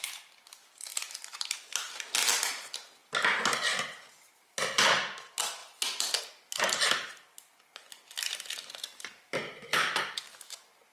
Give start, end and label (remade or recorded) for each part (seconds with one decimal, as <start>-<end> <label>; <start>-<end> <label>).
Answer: 0.0-10.9 recorded